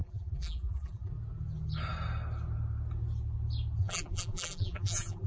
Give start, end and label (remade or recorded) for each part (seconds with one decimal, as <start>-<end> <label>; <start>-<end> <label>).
0.0-1.1 remade; 1.1-3.8 recorded; 3.8-5.3 remade